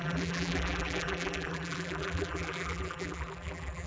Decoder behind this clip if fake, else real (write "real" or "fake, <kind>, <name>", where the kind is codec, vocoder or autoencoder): fake, vocoder, BigVGAN v2